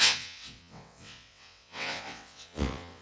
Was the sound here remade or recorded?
remade